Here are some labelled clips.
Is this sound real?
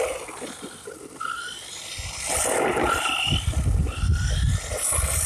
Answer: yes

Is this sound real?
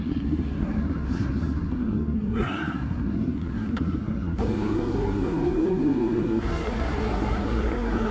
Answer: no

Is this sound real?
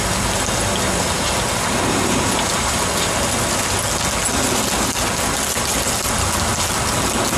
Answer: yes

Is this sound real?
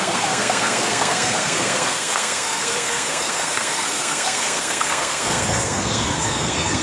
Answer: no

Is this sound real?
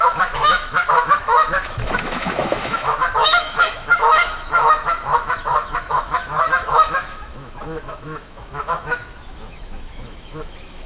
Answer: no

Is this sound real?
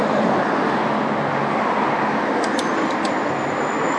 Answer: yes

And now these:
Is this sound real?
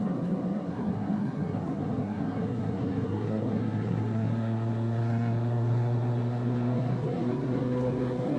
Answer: no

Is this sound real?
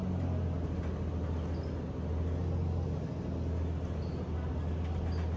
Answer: yes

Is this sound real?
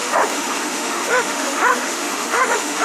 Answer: no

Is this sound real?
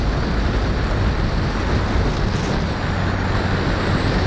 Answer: yes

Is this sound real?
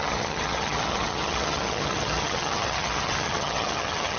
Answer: no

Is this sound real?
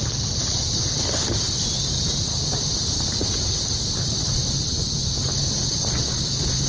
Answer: no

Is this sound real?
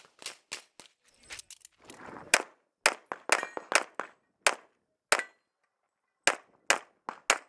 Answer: yes